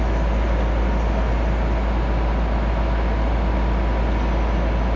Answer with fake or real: real